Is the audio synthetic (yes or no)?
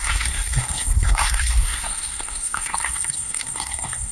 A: yes